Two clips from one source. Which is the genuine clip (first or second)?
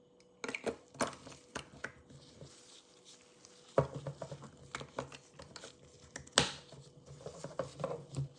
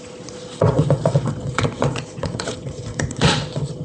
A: first